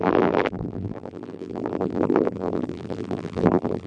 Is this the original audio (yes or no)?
no